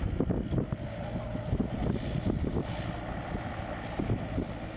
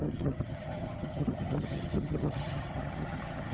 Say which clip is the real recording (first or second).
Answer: first